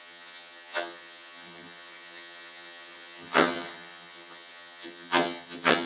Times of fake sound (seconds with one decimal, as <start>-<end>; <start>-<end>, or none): 0.0-5.9